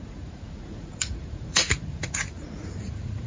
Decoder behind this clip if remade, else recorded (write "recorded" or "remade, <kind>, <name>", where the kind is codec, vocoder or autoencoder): remade, vocoder, Vocos